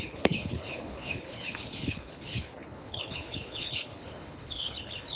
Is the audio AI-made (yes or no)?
yes